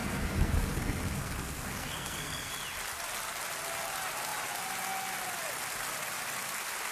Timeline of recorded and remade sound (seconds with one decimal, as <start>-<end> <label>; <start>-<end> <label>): 0.0-2.5 remade; 2.5-6.9 recorded